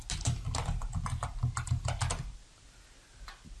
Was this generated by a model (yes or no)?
no